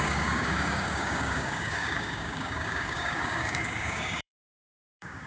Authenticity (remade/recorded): remade